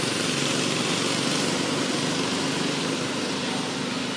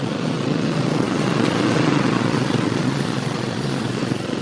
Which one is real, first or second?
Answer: first